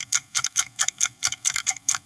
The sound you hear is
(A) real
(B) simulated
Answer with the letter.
B